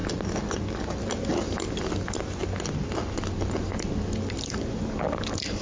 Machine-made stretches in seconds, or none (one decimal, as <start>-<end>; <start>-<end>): none